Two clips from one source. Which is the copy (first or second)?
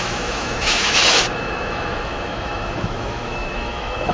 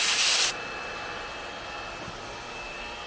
first